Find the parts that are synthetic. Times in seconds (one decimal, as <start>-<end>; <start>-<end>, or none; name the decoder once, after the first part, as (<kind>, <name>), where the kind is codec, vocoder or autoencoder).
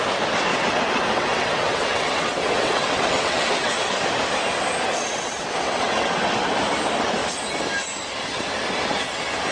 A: 0.5-3.9 (vocoder, WaveNeXt); 5.0-6.5